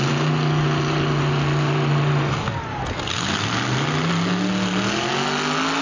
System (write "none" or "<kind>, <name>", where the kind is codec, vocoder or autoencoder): none